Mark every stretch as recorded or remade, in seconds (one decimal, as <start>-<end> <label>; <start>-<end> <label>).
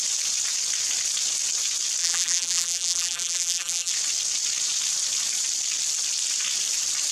0.0-2.0 recorded; 2.0-3.9 remade; 3.9-7.1 recorded